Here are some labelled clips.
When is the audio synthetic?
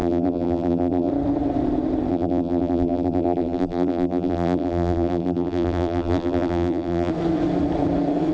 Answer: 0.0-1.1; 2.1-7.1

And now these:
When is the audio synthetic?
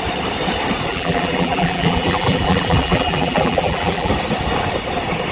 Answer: 0.9-4.1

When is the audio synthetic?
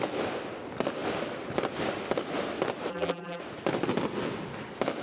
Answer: 2.9-3.4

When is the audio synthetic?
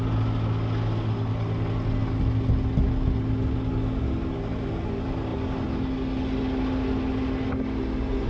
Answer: none